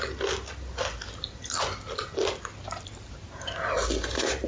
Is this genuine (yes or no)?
yes